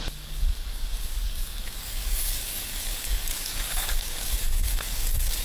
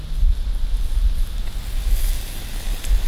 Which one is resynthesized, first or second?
first